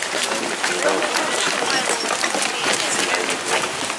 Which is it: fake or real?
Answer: real